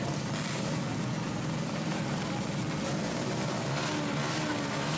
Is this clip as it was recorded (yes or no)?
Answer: yes